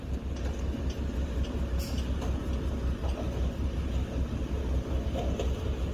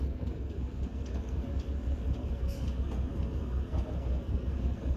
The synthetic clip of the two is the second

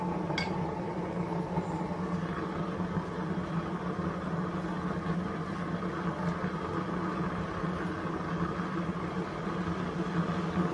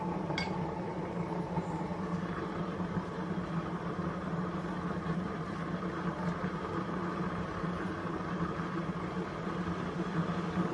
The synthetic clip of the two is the second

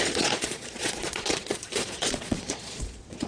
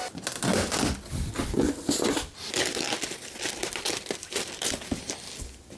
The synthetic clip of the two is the first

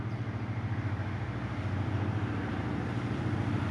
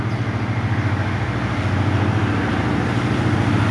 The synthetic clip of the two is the first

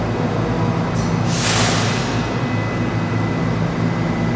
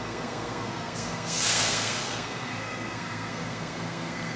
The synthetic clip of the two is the second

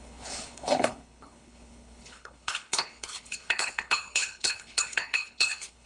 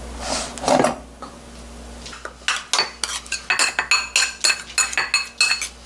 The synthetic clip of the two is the first